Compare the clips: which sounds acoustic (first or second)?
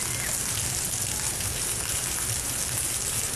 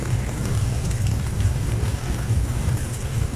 first